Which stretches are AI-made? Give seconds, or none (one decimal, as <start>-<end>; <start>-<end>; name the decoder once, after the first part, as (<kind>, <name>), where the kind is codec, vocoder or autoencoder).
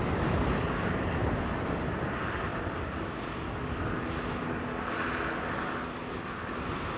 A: none